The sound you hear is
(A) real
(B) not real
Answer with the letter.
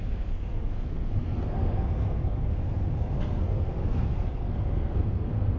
B